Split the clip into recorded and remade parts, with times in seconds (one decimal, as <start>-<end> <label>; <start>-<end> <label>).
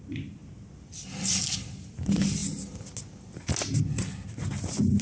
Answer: 0.0-5.0 recorded